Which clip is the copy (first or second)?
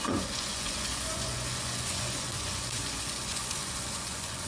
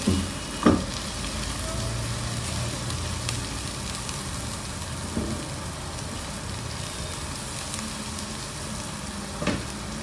first